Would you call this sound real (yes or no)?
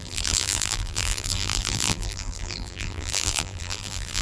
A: no